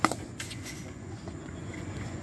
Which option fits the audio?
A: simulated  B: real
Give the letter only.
A